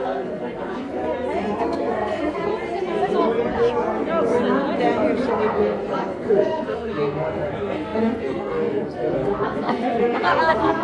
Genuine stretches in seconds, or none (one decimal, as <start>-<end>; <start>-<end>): 1.0-1.6; 2.5-5.3